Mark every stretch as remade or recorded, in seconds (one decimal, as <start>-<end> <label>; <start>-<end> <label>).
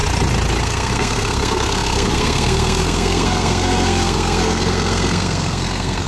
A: 0.0-0.6 recorded; 0.6-6.1 remade